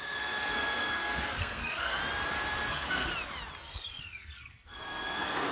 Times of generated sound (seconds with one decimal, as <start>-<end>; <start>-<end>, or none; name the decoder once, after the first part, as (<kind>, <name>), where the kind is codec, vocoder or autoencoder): 0.0-2.0 (codec, SNAC); 2.7-3.1; 3.6-5.5